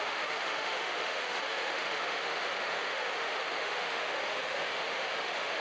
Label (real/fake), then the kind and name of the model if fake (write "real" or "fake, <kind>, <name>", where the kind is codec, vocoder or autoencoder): fake, autoencoder, DAC-VAE